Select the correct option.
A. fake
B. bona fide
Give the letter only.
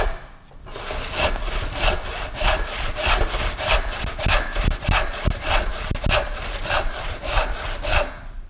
B